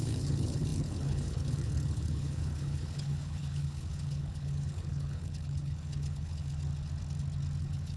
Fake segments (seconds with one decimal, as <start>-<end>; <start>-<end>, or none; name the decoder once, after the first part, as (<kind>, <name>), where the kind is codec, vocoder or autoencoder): 0.0-6.7 (codec, HILCodec); 7.6-8.0